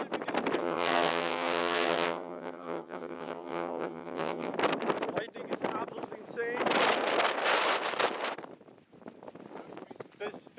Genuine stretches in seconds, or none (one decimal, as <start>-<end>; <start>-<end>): 0.0-0.6; 4.5-10.6